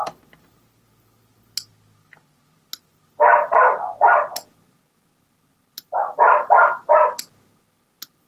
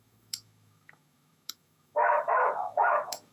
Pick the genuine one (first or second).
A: first